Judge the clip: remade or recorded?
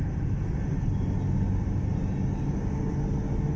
recorded